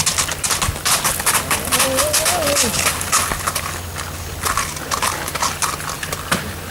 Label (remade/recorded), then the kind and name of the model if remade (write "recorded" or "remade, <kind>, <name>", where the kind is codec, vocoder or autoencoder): recorded